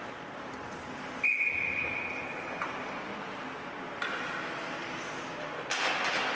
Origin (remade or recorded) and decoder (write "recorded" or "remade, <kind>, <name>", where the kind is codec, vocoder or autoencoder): recorded